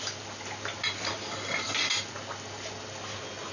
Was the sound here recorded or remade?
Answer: recorded